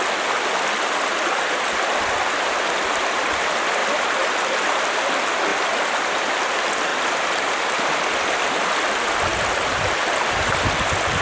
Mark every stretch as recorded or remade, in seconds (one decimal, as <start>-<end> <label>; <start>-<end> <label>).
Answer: 0.0-3.8 recorded; 3.8-5.0 remade; 5.0-5.5 recorded; 5.5-6.3 remade; 6.3-11.2 recorded